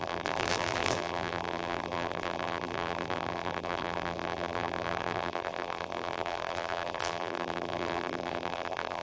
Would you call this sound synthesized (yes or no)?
yes